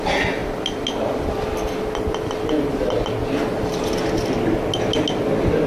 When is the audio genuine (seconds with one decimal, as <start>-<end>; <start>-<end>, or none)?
0.0-5.7